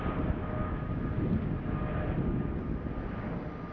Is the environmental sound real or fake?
real